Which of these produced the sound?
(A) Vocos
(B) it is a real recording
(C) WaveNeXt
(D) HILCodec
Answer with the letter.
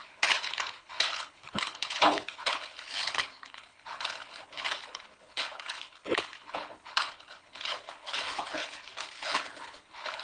D